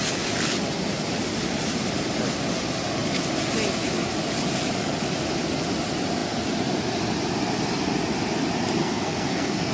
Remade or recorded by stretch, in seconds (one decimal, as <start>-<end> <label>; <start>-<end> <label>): 0.0-8.8 recorded; 8.8-9.7 remade